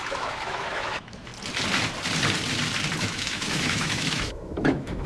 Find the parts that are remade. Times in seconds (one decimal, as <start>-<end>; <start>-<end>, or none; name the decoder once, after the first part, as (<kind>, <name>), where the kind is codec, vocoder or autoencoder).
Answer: 0.0-1.3 (autoencoder, DAC-VAE); 3.0-5.1